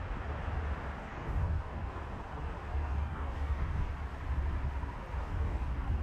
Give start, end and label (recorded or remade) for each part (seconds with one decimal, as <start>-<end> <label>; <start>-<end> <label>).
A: 0.0-1.0 recorded; 1.0-2.0 remade; 2.0-2.7 recorded; 2.7-3.9 remade; 3.9-5.2 recorded; 5.2-6.0 remade